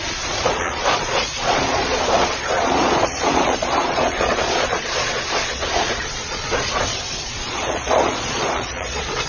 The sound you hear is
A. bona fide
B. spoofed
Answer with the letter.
B